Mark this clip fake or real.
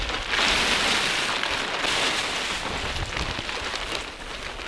real